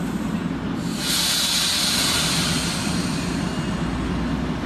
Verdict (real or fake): real